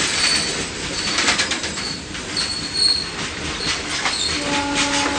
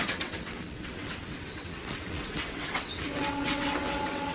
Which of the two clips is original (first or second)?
first